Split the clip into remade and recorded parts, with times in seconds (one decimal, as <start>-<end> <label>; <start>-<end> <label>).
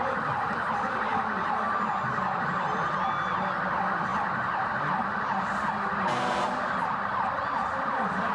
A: 0.0-8.3 recorded